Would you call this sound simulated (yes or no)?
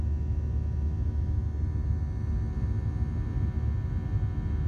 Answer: no